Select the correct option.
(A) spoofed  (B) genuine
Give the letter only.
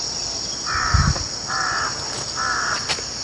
B